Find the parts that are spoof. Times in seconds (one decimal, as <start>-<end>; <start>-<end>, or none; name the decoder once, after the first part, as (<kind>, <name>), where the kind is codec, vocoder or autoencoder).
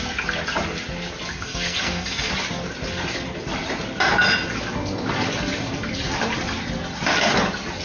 1.3-2.3 (codec, SNAC)